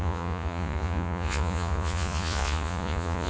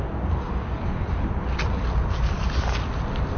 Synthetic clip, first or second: first